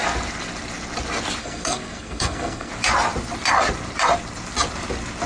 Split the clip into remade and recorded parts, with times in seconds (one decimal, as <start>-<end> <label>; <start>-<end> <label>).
0.0-1.4 recorded; 1.4-2.7 remade; 2.7-5.3 recorded